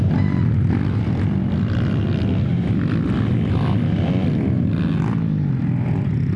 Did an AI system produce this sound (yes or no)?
no